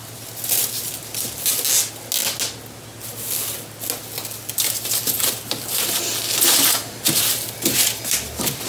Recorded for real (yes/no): yes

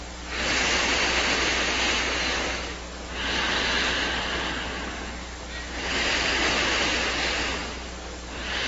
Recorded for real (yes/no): yes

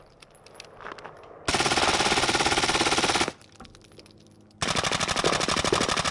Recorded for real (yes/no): yes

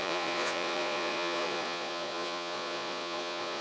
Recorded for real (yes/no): no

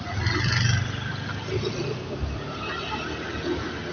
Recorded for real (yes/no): yes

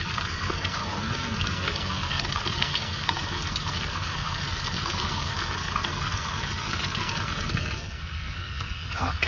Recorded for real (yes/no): no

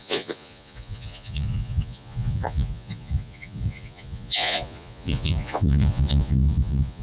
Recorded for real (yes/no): no